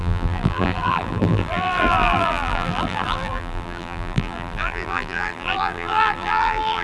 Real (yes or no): no